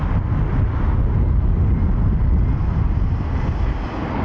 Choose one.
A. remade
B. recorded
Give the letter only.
B